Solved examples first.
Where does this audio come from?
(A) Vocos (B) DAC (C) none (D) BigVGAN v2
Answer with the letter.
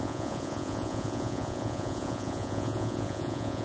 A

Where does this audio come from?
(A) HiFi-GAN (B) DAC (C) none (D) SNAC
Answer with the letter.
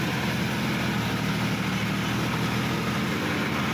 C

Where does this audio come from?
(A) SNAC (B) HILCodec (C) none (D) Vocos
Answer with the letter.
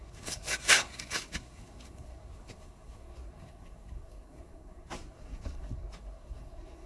A